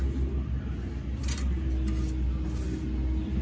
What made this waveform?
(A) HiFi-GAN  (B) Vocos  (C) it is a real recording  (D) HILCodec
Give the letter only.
C